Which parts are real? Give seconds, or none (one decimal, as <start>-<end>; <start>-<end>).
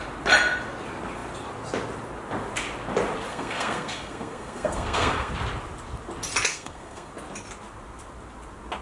0.0-3.3; 5.3-6.5; 7.1-8.8